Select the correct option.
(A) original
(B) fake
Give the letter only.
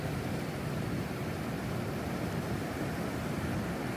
A